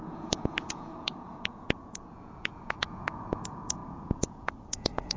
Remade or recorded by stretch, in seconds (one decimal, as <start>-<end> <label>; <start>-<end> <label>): 0.0-5.2 remade